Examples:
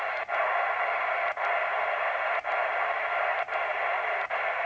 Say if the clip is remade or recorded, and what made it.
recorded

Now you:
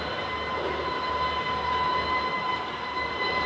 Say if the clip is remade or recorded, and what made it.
recorded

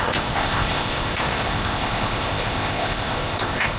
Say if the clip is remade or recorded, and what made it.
remade, codec, ZipCodec